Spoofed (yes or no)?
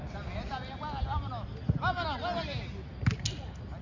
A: no